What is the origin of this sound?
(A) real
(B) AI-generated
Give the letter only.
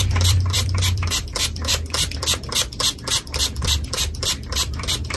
B